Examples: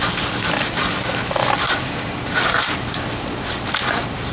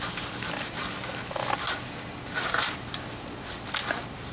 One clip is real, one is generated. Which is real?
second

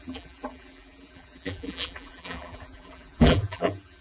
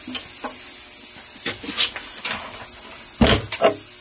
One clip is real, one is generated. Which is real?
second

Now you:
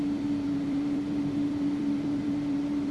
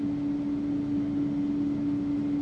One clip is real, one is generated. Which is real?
second